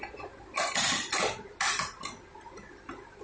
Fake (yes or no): no